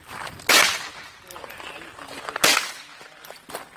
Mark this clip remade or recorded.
recorded